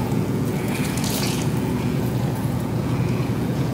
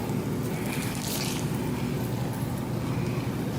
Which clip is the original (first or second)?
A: second